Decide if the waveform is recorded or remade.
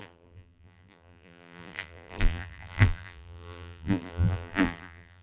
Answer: remade